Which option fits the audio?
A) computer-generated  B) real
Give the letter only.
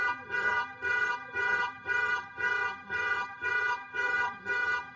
A